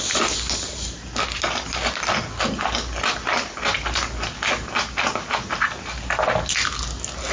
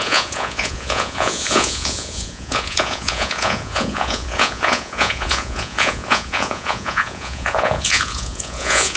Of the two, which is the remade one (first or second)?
second